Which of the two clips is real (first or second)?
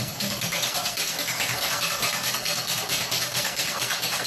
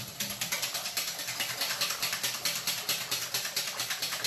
second